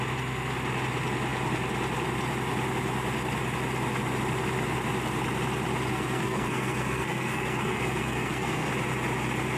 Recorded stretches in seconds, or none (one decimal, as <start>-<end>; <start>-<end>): 0.0-5.9; 8.7-9.6